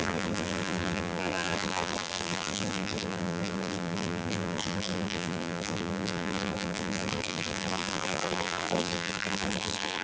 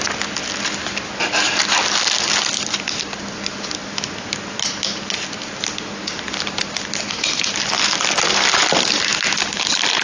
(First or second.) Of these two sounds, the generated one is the first